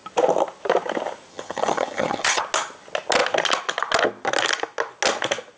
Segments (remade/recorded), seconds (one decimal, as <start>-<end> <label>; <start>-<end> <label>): 0.0-1.3 recorded; 1.3-2.4 remade; 2.4-5.6 recorded